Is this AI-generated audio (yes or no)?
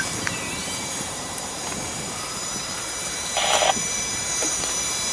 yes